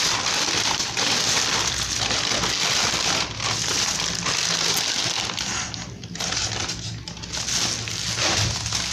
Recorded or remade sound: recorded